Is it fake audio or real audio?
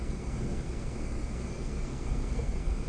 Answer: fake